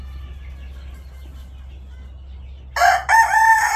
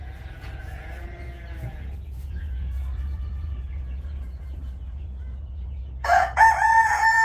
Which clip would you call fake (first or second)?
second